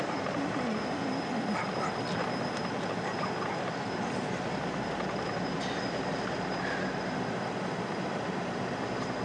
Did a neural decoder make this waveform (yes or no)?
no